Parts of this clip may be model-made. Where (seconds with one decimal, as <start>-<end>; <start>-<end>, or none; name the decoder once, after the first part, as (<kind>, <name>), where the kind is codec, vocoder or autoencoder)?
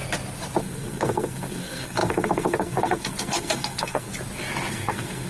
0.6-4.1 (codec, SNAC); 4.7-5.3